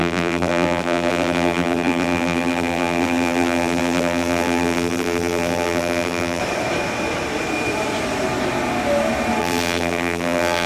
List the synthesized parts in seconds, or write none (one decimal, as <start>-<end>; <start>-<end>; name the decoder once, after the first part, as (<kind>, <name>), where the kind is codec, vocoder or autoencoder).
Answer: 0.0-6.4 (vocoder, BigVGAN v2); 9.4-10.7